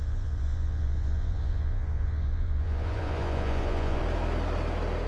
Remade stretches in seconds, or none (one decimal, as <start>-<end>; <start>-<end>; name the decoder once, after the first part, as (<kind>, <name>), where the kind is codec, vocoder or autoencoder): 0.0-4.0 (vocoder, Vocos)

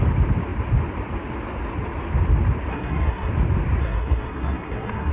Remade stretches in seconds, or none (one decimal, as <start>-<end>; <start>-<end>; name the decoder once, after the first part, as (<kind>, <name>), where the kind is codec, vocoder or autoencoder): 2.7-3.3 (codec, SNAC); 3.8-5.1

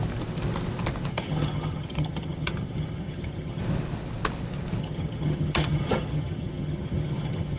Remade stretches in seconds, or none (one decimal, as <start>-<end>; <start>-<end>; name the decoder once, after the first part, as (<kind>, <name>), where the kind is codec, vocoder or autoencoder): 1.1-3.6 (vocoder, HiFi-GAN); 4.8-7.6

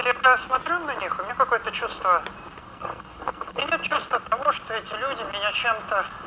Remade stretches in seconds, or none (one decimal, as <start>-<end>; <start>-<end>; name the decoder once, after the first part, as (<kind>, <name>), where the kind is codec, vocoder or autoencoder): 2.6-3.6 (codec, SNAC)

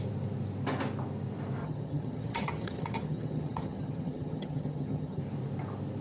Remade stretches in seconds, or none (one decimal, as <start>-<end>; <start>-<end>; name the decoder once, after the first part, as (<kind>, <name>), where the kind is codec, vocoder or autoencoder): 1.6-5.2 (vocoder, HiFi-GAN)